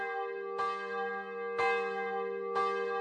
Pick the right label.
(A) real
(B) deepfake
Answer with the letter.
A